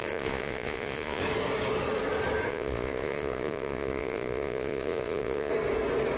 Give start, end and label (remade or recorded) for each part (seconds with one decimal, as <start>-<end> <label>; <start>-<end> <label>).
0.0-1.2 remade; 1.2-2.5 recorded; 2.5-5.5 remade; 5.5-6.2 recorded